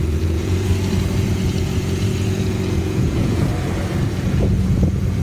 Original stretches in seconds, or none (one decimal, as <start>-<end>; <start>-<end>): 0.7-1.3; 3.5-4.1

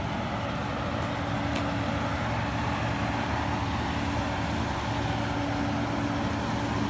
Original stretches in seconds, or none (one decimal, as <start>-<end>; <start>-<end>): 0.0-6.9

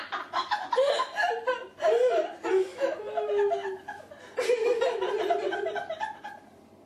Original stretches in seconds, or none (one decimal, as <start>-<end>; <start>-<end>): 0.0-2.7; 4.0-6.9